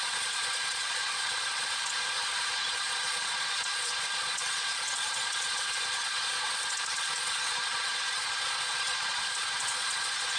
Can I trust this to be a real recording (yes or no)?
no